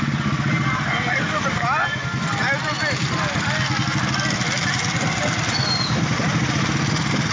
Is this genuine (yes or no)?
yes